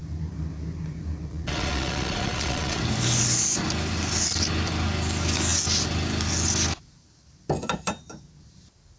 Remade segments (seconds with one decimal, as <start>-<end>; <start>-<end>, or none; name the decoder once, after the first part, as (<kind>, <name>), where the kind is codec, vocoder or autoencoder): 1.3-2.8 (vocoder, Vocos)